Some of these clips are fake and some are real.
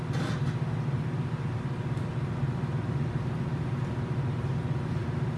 real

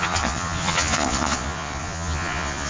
fake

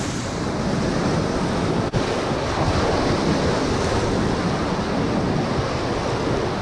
real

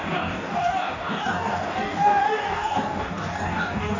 fake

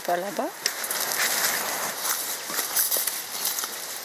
real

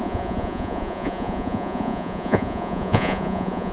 fake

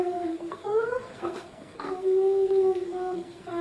fake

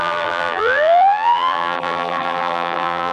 fake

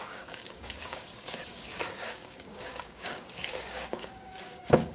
fake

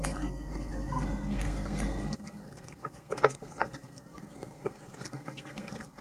fake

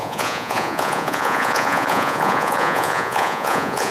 fake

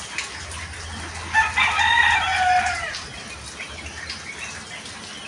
real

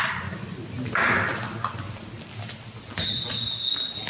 real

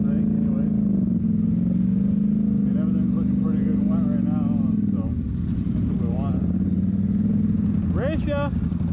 real